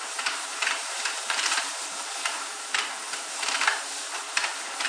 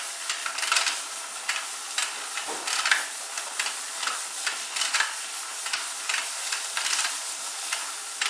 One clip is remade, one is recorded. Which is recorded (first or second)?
second